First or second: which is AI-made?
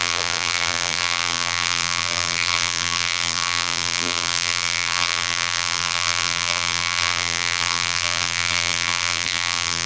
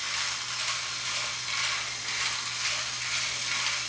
first